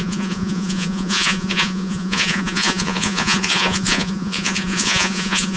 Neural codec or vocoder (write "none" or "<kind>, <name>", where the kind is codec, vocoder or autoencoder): vocoder, Vocos